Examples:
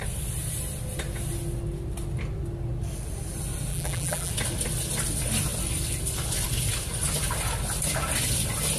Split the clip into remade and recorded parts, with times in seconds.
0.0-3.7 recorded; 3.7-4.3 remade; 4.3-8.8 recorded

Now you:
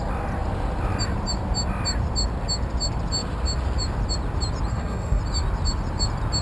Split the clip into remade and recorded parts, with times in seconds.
0.0-4.7 recorded; 4.7-5.2 remade; 5.2-6.4 recorded

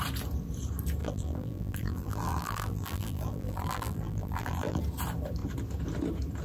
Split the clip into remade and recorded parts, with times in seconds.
0.0-1.0 recorded; 1.0-4.8 remade; 4.8-6.4 recorded

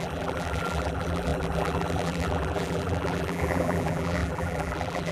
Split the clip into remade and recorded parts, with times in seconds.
0.0-5.1 remade